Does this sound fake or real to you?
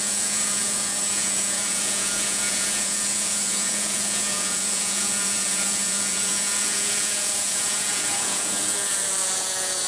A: fake